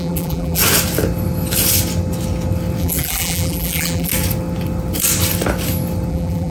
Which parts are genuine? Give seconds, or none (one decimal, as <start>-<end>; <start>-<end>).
0.6-2.8; 4.1-6.1